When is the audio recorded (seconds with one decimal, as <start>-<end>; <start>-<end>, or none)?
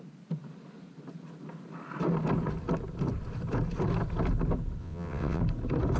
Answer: 0.0-4.8; 5.4-6.0